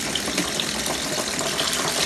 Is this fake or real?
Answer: real